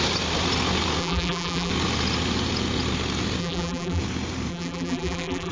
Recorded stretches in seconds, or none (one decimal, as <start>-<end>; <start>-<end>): 0.0-1.0; 1.7-3.4; 4.0-4.5

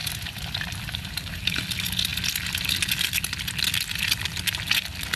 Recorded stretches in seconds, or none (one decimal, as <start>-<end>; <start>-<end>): 1.6-5.2